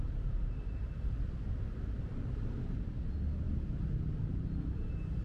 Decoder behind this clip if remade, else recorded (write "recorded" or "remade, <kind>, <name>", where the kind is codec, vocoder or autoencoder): remade, vocoder, BigVGAN v2